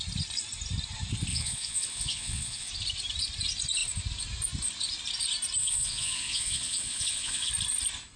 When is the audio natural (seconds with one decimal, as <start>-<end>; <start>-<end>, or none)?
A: 0.0-1.3; 2.7-5.6; 7.5-8.2